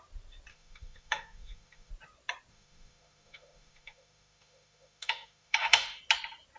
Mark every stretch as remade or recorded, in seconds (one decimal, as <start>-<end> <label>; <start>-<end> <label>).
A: 0.0-0.5 recorded; 0.5-1.9 remade; 1.9-2.5 recorded; 2.5-6.0 remade; 6.0-6.6 recorded